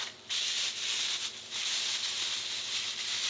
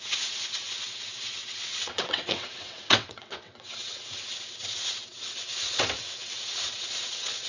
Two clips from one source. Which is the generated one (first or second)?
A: second